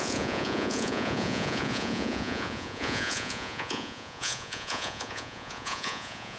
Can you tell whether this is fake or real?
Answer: fake